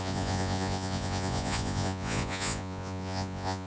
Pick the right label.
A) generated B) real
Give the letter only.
A